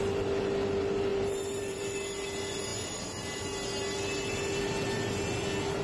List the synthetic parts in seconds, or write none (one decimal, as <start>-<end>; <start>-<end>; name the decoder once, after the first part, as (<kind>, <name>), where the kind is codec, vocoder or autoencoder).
1.1-1.8 (vocoder, BigVGAN v2)